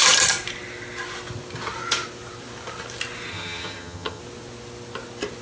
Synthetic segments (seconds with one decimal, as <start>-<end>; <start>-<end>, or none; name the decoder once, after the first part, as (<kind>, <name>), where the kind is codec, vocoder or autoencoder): 3.3-4.2 (vocoder, HiFi-GAN)